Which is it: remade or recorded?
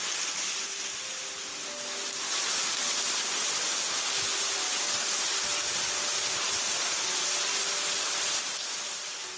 recorded